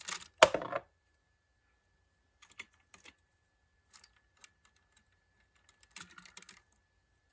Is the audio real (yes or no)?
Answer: yes